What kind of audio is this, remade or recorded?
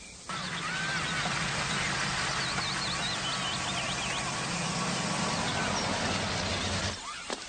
recorded